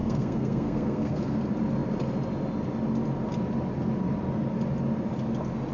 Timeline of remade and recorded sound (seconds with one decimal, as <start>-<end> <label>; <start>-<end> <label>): 0.0-1.4 remade; 1.4-5.7 recorded